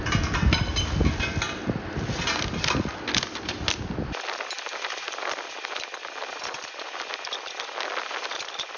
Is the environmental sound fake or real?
real